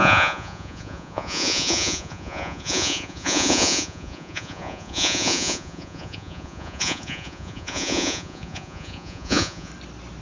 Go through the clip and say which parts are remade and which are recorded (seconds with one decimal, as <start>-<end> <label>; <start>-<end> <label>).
0.0-9.7 remade; 9.7-10.2 recorded